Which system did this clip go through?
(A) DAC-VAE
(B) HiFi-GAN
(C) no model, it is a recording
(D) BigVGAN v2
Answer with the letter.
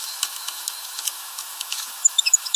A